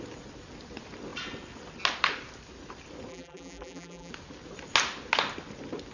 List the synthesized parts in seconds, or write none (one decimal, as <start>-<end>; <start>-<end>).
3.1-4.1